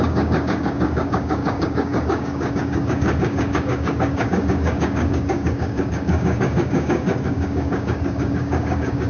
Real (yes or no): no